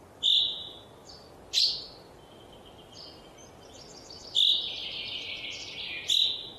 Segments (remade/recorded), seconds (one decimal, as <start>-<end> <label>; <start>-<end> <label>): 0.0-6.6 recorded